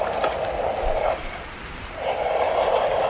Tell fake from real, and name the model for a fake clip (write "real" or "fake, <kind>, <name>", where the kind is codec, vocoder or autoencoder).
real